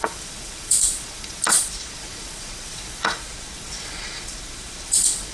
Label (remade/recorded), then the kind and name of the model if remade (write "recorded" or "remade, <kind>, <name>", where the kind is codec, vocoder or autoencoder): remade, vocoder, Vocos